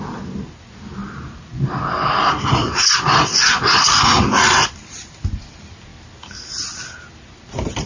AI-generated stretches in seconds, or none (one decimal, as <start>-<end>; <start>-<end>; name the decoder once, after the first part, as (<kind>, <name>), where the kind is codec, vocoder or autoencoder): none